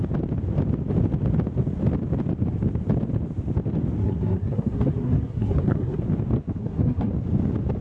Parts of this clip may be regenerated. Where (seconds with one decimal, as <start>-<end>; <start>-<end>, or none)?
4.0-6.0; 6.6-7.1